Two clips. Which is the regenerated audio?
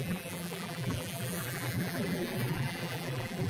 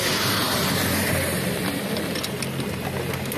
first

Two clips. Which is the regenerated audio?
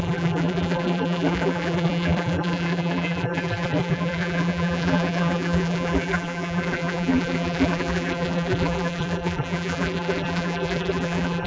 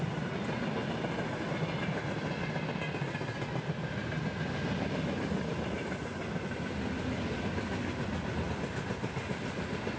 first